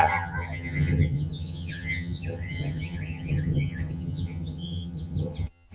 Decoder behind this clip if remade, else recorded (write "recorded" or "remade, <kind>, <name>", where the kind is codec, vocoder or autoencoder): remade, vocoder, HiFi-GAN